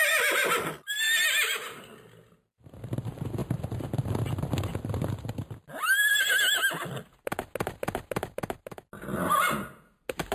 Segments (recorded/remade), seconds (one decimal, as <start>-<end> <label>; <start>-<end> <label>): 0.0-10.3 recorded